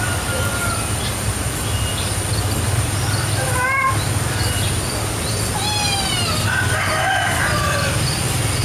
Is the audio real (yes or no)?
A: yes